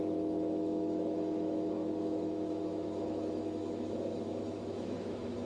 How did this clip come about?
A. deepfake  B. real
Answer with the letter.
A